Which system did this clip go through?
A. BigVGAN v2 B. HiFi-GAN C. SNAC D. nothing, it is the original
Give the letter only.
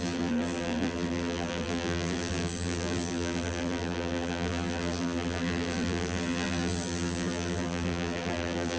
A